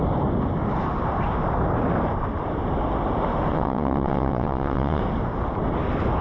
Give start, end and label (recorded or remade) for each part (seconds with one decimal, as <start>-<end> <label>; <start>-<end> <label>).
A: 0.0-3.5 recorded; 3.5-5.0 remade; 5.0-6.2 recorded